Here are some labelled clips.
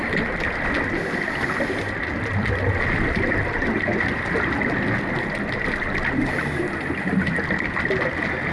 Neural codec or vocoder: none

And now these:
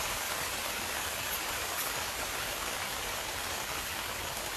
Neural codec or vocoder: codec, DAC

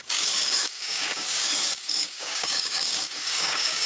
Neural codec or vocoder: codec, DAC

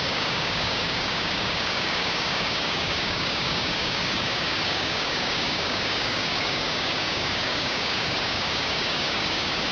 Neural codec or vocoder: codec, DAC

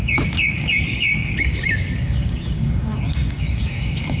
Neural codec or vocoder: codec, DAC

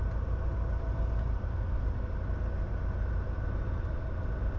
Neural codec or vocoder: none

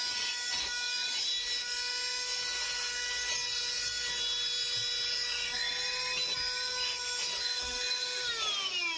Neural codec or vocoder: none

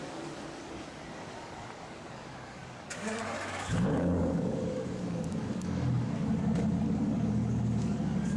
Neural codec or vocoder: codec, DAC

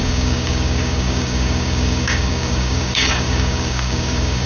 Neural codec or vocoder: codec, DAC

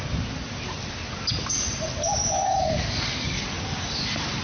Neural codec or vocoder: none